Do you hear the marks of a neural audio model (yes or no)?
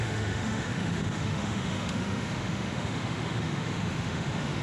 yes